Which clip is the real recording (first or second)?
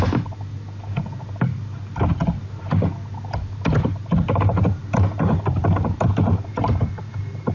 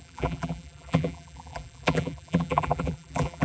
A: first